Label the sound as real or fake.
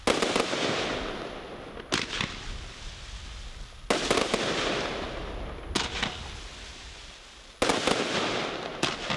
real